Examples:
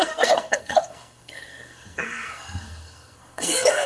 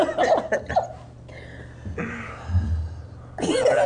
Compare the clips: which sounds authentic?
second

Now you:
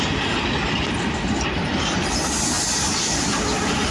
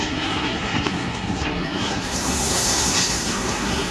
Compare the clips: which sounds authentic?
first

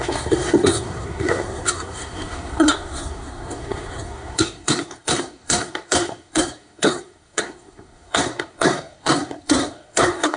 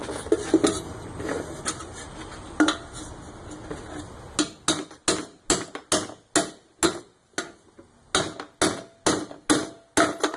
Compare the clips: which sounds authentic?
second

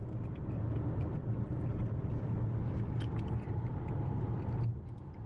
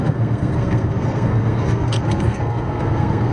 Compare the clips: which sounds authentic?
first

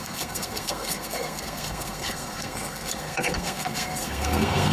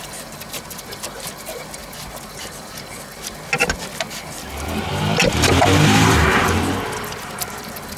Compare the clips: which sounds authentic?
second